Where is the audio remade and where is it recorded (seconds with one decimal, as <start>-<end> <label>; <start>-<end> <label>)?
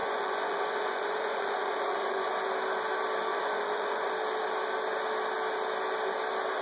0.0-2.3 remade; 2.3-3.3 recorded; 3.3-4.1 remade; 4.1-6.6 recorded